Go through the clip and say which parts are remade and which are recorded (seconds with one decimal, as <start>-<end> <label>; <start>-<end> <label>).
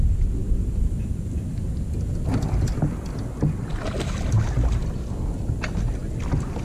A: 0.0-6.6 recorded